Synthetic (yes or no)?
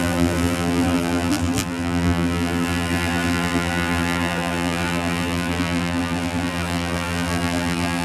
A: yes